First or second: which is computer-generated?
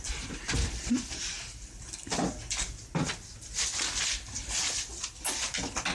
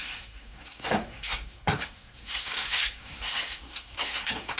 second